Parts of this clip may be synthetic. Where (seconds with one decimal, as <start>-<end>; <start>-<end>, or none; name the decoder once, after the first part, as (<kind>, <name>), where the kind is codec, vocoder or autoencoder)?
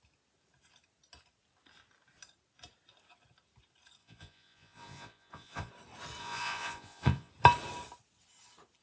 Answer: 4.0-5.7 (vocoder, Vocos); 6.2-7.3